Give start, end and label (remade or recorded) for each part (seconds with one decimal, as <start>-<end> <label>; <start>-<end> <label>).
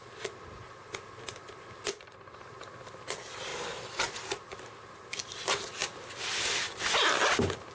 0.0-7.7 recorded